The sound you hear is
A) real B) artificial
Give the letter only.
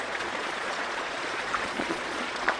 B